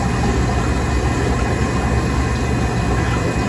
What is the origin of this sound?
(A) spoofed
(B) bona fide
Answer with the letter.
B